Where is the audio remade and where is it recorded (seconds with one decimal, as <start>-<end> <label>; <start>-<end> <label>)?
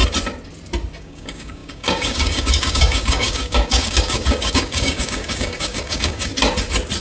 0.0-1.0 recorded; 1.0-6.3 remade; 6.3-7.0 recorded